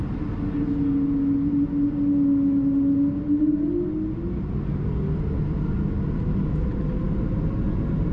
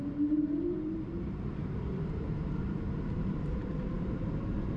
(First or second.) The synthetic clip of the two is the second